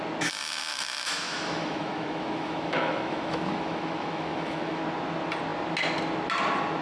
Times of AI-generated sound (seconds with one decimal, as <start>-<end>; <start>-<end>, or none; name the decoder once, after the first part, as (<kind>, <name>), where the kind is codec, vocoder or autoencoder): 0.7-4.8 (autoencoder, DAC-VAE)